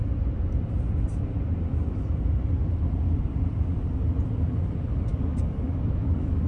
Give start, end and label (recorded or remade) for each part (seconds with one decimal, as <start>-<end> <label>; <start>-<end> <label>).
0.0-5.1 recorded; 5.1-6.5 remade